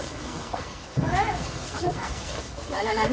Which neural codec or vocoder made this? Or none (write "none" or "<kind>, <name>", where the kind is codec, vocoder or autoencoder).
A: codec, SNAC